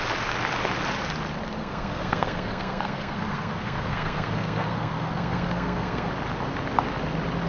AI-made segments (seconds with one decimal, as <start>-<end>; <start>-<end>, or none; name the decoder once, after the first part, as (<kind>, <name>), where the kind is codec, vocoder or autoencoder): 1.6-6.1 (codec, SNAC)